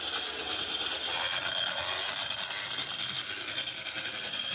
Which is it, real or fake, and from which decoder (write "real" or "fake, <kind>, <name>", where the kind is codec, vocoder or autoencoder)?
real